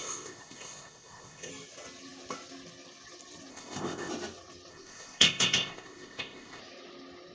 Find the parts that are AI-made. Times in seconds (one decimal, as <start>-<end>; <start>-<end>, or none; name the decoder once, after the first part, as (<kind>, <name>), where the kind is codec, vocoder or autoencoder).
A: 0.0-1.5 (codec, ZipCodec); 3.5-4.1; 4.7-6.6